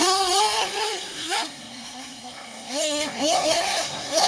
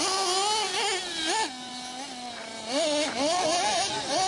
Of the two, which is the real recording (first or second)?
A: second